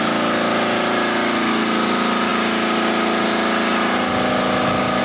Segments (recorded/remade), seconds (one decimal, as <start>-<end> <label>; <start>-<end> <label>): 0.0-5.0 recorded